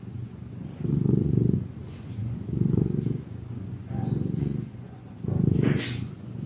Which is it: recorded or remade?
remade